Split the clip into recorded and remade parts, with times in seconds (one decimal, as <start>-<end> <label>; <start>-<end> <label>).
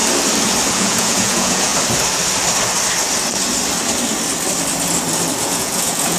0.0-0.7 recorded; 0.7-1.7 remade; 1.7-5.4 recorded; 5.4-6.2 remade